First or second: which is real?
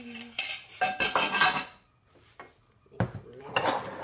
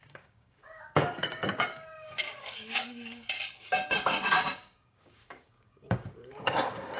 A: first